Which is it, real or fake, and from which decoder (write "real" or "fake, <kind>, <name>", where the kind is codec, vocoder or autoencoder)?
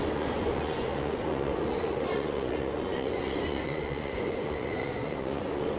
fake, vocoder, Vocos